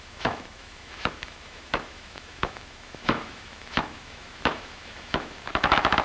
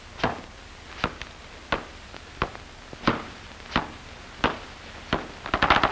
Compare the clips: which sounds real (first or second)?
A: second